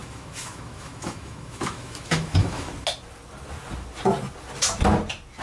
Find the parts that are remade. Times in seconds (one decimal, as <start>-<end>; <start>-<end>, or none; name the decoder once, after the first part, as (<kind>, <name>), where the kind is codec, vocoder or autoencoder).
0.0-2.7 (autoencoder, DAC-VAE)